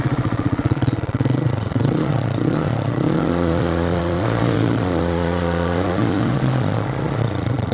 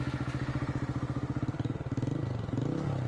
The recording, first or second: second